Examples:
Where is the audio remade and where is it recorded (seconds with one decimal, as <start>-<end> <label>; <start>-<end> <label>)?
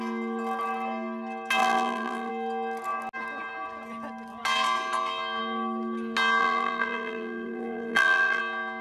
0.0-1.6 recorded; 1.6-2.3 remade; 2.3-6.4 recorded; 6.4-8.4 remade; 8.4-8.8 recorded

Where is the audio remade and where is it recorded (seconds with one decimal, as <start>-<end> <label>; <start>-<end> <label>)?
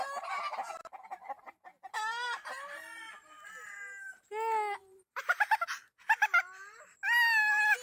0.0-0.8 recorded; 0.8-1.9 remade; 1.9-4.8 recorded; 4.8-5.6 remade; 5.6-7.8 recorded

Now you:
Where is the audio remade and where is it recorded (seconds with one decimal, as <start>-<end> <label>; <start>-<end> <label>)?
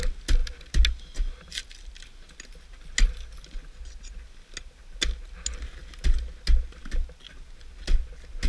0.0-8.5 recorded